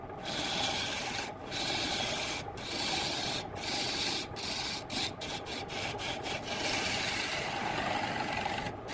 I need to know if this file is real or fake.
real